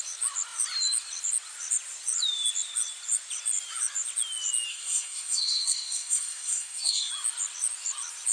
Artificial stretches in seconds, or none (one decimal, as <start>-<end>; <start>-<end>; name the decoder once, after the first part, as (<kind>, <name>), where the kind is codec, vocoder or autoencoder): 4.7-7.1 (codec, SNAC)